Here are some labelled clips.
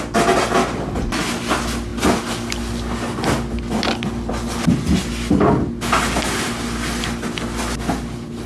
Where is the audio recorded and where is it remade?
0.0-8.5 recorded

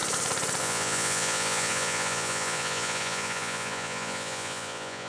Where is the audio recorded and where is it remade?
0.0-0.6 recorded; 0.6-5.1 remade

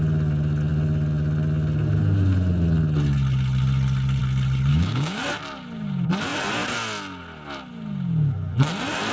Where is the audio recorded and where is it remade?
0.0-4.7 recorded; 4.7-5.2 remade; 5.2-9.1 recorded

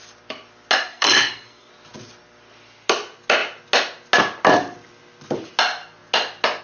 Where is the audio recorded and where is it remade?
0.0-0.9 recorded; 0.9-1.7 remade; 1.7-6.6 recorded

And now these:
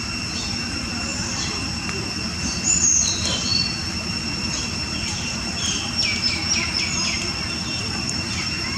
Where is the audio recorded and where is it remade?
0.0-6.4 remade; 6.4-7.5 recorded; 7.5-8.8 remade

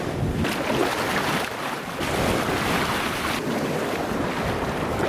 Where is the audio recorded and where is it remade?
0.0-5.1 recorded

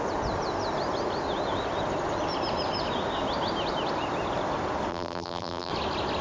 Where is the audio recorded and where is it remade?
0.0-4.9 recorded; 4.9-5.7 remade; 5.7-6.2 recorded

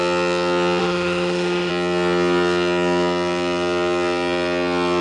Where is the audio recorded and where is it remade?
0.0-0.8 recorded; 0.8-1.7 remade; 1.7-5.0 recorded